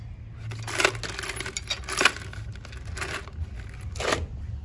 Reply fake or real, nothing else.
real